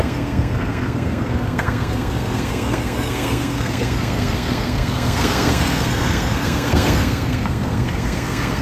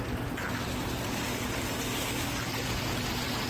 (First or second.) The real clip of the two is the second